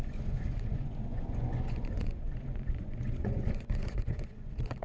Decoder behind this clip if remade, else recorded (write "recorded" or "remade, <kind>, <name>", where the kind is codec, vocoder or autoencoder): remade, vocoder, Vocos